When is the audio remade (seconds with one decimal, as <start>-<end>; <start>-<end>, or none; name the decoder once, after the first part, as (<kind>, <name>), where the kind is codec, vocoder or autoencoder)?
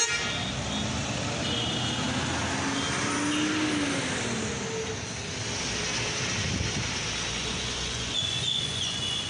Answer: 7.3-9.3 (vocoder, Vocos)